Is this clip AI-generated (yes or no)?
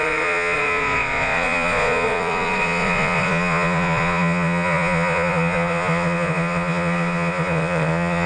yes